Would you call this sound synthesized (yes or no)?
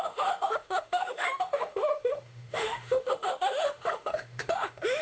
yes